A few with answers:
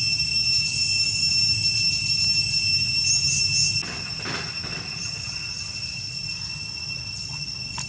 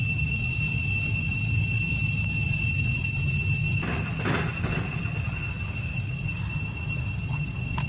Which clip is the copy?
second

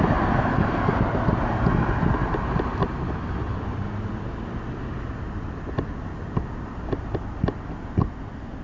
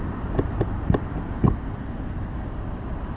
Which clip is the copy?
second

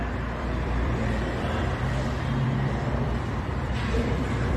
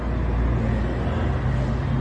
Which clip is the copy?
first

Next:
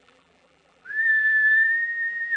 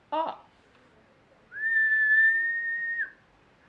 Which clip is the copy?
first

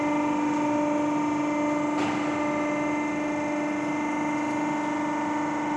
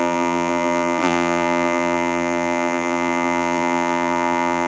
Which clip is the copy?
second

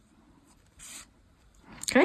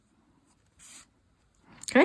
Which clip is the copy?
first